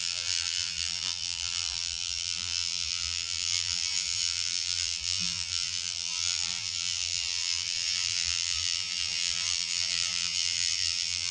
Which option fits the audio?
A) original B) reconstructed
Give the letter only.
B